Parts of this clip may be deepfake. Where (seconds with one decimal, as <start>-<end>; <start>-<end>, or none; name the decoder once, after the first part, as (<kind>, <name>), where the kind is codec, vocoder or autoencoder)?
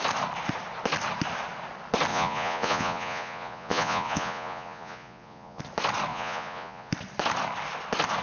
2.1-5.6 (vocoder, Vocos); 6.1-6.9